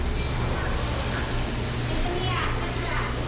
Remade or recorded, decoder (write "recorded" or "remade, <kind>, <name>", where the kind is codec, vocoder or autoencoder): recorded